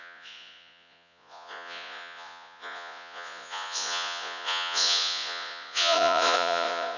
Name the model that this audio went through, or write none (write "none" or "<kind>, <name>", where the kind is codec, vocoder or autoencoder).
vocoder, Vocos